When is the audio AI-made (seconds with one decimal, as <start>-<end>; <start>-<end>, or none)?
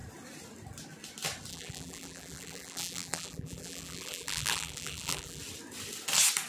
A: 1.5-5.4